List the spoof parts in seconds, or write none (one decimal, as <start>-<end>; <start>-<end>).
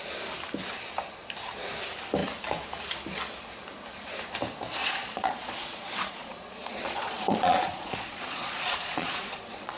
4.8-9.8